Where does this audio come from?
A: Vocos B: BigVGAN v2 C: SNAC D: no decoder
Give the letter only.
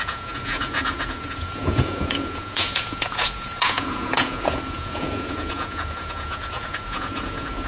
A